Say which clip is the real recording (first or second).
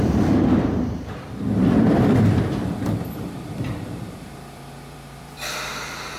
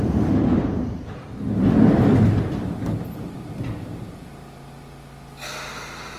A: second